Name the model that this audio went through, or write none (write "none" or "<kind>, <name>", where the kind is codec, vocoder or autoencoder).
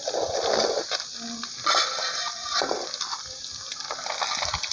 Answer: none